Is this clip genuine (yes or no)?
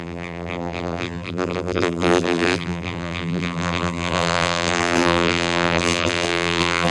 no